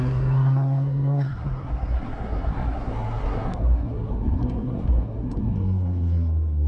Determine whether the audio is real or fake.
fake